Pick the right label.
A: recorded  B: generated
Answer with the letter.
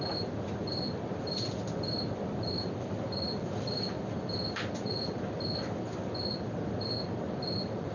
A